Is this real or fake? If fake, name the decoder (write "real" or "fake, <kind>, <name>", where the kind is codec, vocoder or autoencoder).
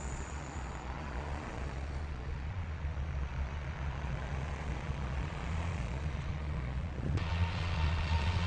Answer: fake, vocoder, Vocos